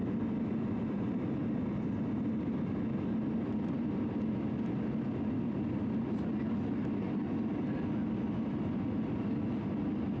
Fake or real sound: real